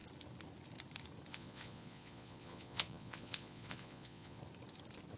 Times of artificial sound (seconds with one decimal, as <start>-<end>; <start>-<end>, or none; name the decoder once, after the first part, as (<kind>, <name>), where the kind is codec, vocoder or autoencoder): 1.3-4.4 (vocoder, Vocos)